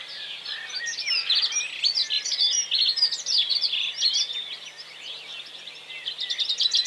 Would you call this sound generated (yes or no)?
no